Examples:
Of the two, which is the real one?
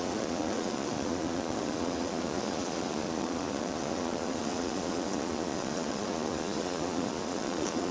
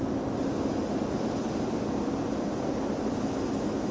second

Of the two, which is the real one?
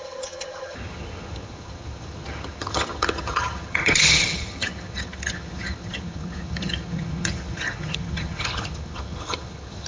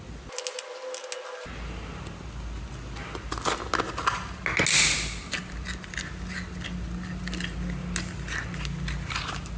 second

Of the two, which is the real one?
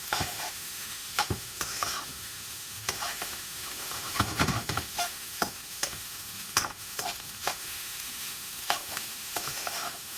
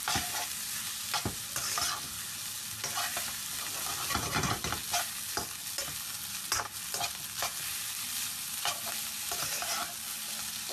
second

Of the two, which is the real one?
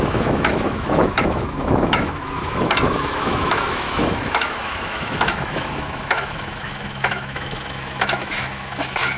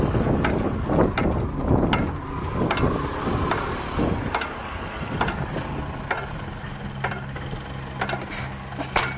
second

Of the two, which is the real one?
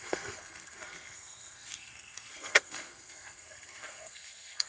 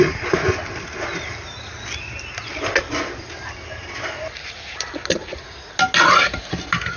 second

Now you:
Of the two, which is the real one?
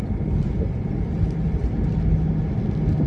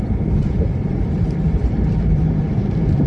first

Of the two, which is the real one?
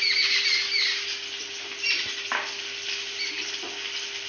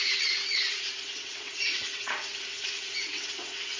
first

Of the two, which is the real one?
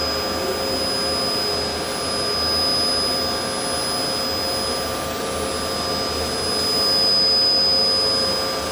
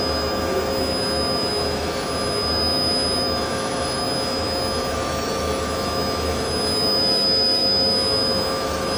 first